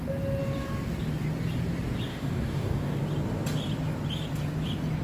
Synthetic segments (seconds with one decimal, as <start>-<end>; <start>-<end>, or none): 2.1-3.0